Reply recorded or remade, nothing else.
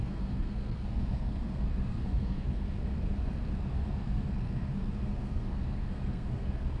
remade